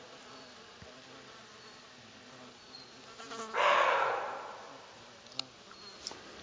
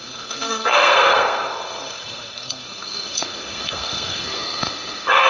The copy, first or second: second